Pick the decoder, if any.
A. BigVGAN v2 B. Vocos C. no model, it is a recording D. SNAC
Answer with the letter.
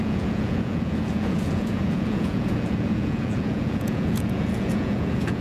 B